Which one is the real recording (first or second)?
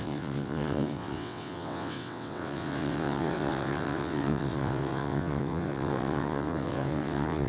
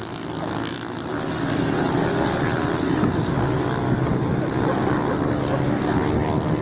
second